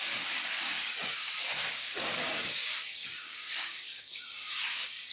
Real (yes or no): no